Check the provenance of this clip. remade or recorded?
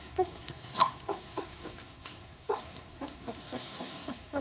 remade